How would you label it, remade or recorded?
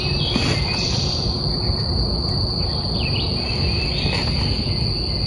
recorded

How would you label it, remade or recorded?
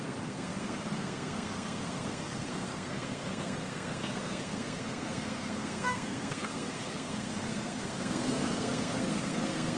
remade